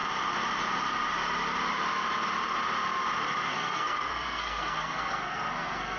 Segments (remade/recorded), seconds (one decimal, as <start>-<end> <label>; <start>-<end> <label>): 0.0-3.5 recorded; 3.5-6.0 remade